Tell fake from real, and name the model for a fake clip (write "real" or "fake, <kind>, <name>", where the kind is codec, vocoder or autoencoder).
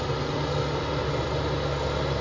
real